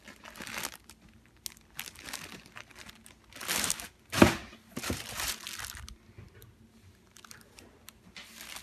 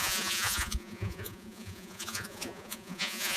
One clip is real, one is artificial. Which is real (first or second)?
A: first